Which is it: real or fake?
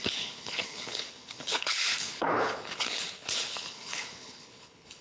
fake